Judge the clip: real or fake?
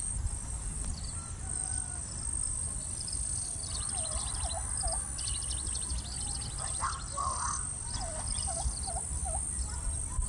real